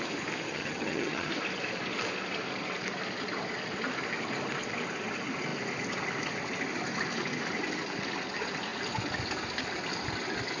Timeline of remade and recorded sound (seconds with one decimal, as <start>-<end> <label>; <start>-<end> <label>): 0.0-0.5 recorded; 0.5-1.3 remade; 1.3-10.6 recorded